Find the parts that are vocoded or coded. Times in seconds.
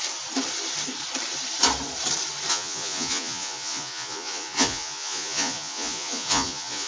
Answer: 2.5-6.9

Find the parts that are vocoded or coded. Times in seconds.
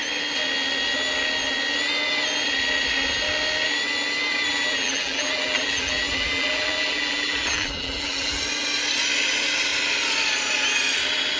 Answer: 4.5-8.4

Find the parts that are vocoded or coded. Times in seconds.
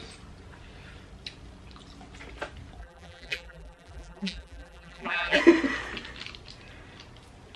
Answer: 2.8-5.4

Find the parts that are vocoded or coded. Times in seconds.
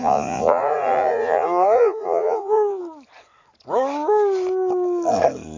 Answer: 0.0-2.8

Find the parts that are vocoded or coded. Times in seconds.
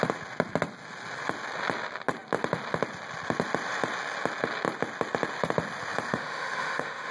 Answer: 6.1-7.1